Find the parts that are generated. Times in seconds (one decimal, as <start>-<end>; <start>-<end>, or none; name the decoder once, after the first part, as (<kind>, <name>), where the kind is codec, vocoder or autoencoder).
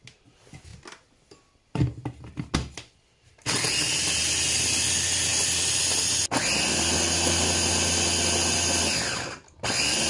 none